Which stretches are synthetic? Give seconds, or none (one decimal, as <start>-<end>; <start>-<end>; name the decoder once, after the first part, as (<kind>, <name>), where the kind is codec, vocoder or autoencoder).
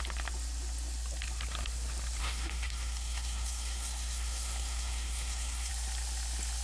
2.2-5.7 (codec, SNAC)